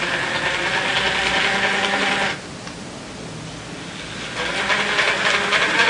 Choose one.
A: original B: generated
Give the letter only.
A